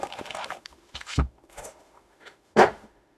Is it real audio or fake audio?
fake